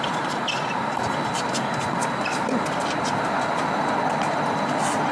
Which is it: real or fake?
real